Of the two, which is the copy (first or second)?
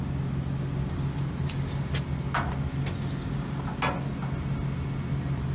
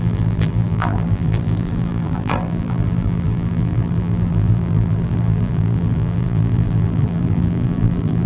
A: second